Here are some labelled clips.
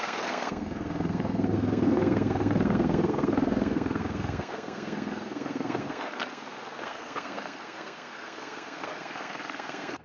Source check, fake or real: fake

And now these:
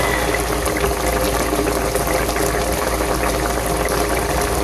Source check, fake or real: real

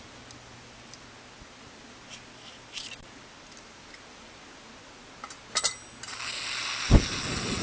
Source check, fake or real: real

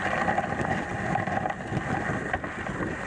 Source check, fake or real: real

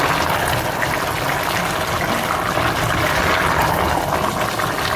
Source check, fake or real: real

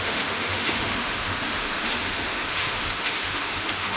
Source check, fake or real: fake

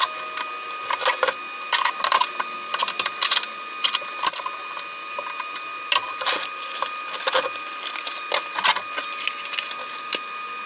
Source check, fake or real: real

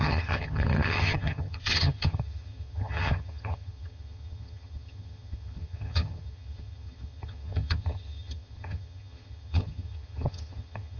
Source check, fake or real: fake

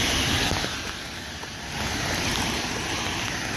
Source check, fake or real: real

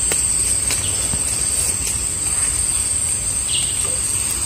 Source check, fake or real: real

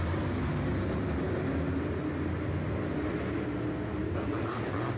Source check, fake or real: real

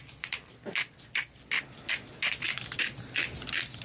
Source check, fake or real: real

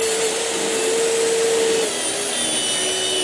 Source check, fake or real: real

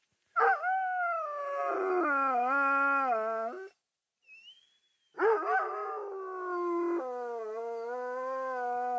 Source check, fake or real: real